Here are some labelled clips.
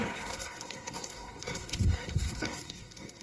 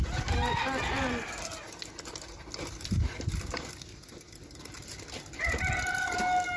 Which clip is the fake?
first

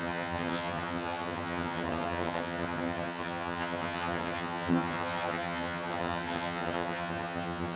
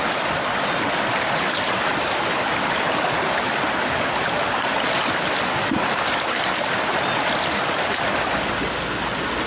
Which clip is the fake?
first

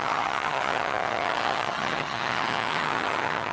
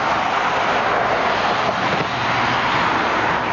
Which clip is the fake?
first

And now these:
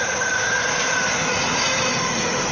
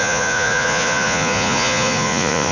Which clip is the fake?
second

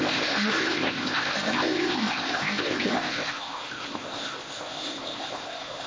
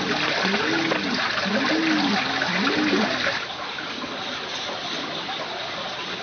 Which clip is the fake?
first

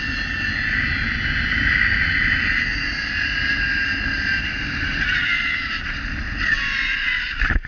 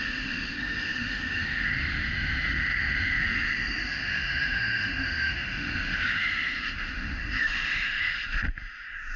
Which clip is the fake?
second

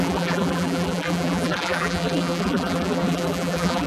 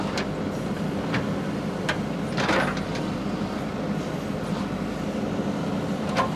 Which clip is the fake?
first